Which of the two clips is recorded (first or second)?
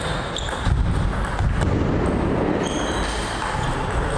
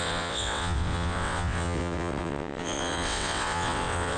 first